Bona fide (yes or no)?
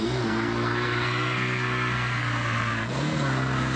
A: no